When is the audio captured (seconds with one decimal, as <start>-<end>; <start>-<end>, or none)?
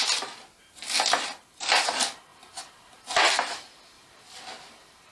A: 0.0-2.3; 4.2-5.1